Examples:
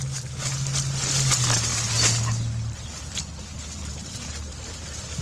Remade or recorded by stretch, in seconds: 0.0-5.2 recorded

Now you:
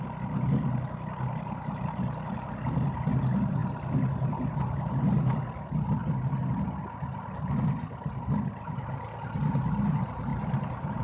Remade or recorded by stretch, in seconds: 0.0-10.3 recorded; 10.3-11.0 remade

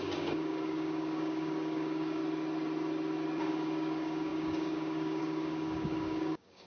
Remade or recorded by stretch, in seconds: 0.0-2.2 remade; 2.2-3.4 recorded; 3.4-6.7 remade

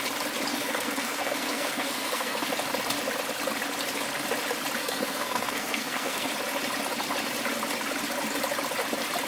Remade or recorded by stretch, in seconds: 0.0-0.5 recorded; 0.5-2.5 remade; 2.5-4.8 recorded; 4.8-6.3 remade; 6.3-9.3 recorded

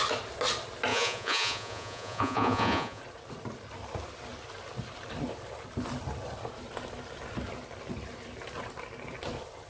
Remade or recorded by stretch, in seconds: 0.0-0.9 recorded; 0.9-3.0 remade; 3.0-9.7 recorded

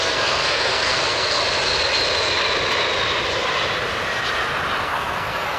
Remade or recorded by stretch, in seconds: 0.0-1.4 remade; 1.4-4.8 recorded; 4.8-5.6 remade

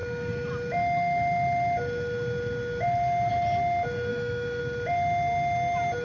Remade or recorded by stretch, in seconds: 0.0-4.1 recorded; 4.1-4.6 remade; 4.6-6.0 recorded